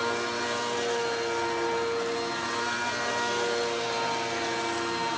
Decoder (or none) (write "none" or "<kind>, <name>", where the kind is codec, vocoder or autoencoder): none